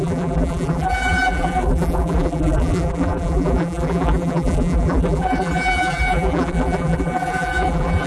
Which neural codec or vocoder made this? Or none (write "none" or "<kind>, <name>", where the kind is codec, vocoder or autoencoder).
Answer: vocoder, BigVGAN v2